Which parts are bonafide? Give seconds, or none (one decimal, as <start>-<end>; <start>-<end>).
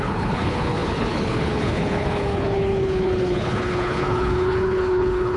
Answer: none